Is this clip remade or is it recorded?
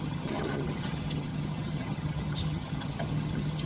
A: remade